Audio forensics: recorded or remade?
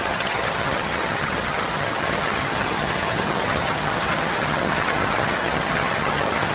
remade